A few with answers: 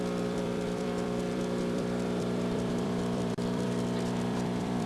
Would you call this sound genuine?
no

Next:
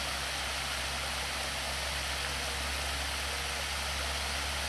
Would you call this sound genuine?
yes